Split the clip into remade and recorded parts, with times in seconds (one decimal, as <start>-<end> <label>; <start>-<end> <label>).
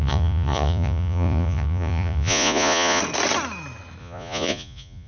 0.0-3.0 remade; 3.0-4.0 recorded; 4.0-5.1 remade